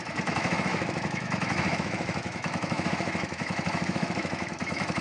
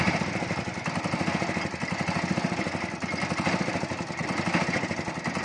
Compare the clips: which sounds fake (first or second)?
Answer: first